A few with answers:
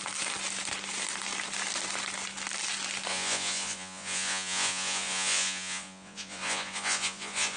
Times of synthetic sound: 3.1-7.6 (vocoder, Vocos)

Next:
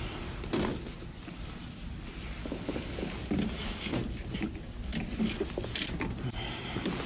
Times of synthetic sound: 2.4-3.1 (codec, HILCodec)